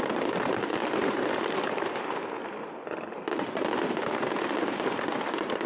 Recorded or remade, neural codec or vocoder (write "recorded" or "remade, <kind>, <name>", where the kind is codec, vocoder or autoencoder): recorded